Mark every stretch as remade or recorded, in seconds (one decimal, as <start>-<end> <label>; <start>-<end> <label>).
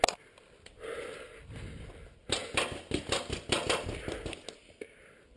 0.0-5.4 recorded